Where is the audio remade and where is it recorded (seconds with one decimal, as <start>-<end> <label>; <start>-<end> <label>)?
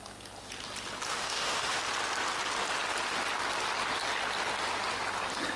0.0-1.1 recorded; 1.1-1.8 remade; 1.8-5.6 recorded